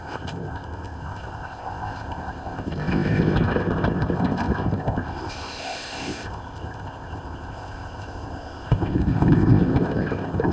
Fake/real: fake